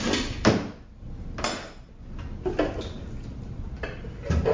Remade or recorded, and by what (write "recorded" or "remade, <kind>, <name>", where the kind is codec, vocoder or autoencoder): recorded